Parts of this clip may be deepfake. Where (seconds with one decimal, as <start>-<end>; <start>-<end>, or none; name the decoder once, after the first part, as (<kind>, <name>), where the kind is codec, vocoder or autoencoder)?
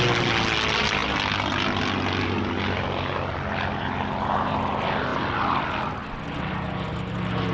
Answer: none